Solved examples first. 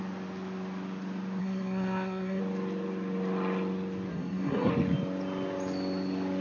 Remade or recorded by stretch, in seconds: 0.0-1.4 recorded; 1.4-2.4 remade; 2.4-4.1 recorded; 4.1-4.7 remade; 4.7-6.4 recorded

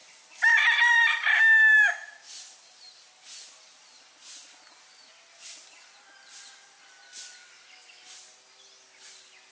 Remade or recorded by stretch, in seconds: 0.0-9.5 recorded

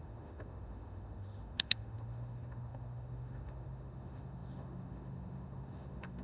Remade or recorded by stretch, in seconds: 0.0-6.2 remade

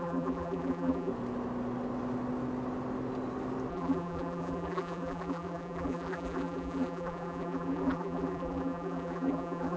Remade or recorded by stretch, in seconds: 0.0-1.1 remade; 1.1-3.7 recorded; 3.7-9.8 remade